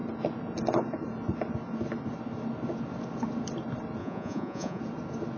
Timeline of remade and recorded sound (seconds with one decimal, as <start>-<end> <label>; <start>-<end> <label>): 0.0-4.0 recorded; 4.0-4.8 remade; 4.8-5.4 recorded